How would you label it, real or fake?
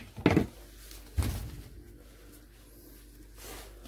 real